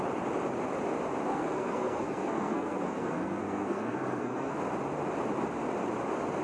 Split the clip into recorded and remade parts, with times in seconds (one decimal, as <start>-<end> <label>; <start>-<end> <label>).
0.0-1.3 recorded; 1.3-4.6 remade; 4.6-6.4 recorded